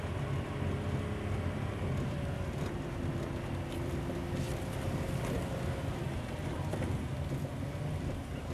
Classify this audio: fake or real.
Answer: real